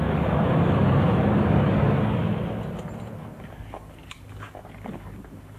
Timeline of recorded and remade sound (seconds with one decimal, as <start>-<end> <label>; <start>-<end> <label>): 0.0-2.2 remade; 2.2-3.2 recorded; 3.2-5.6 remade